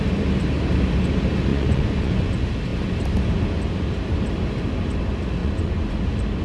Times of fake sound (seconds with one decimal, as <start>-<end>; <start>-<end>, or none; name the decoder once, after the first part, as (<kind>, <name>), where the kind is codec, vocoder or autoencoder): 1.5-2.3 (vocoder, Vocos); 5.4-6.0